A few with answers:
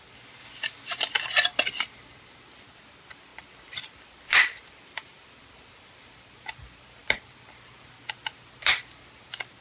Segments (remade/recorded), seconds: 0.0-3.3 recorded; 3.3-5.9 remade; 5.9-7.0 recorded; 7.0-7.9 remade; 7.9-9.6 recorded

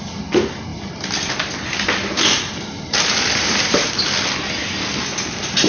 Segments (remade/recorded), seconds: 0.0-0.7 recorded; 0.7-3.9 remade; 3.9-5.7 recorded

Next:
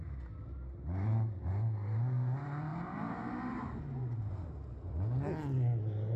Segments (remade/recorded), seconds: 0.0-6.2 recorded